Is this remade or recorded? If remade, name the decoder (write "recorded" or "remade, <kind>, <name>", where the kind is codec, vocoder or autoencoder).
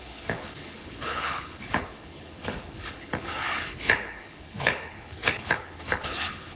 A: remade, codec, HILCodec